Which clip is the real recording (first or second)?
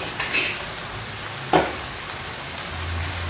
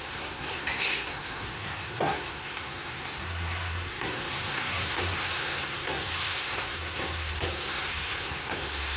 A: first